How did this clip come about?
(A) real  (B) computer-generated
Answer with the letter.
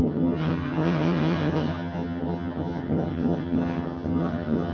B